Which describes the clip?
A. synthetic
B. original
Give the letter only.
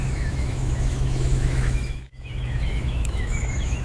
A